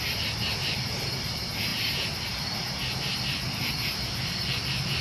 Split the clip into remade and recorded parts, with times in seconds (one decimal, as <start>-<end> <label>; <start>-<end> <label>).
0.0-5.0 recorded